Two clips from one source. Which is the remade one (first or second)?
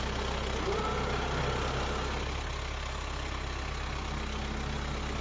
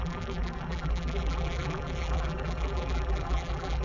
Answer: second